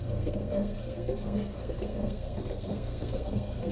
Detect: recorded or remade remade